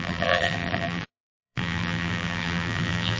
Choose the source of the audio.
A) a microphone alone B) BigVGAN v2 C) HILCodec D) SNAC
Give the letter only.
B